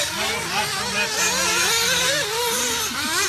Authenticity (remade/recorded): recorded